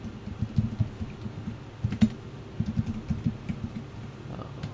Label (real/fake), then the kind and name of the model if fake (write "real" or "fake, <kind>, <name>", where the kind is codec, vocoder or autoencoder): real